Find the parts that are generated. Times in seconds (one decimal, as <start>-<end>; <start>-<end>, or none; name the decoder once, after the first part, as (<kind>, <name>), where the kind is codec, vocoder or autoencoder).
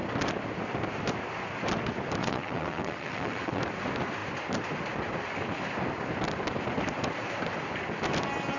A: 2.2-3.6 (vocoder, WaveNeXt)